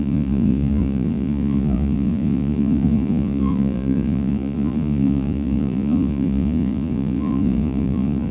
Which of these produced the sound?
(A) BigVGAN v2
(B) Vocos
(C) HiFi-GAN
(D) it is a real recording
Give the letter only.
B